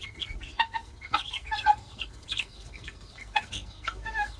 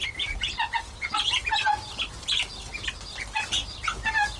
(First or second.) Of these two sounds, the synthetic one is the first